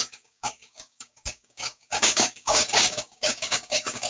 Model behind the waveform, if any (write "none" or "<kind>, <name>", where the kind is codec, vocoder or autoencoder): codec, DAC